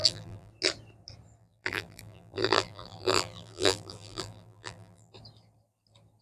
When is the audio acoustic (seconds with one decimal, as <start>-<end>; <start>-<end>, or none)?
0.5-1.4; 5.1-6.2